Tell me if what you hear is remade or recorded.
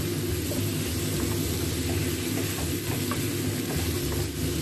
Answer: recorded